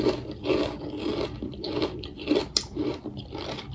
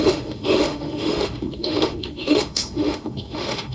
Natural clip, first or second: first